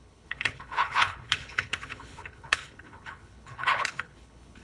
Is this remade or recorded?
remade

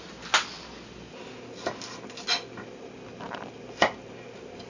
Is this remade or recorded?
recorded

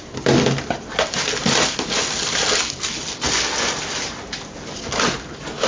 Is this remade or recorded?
recorded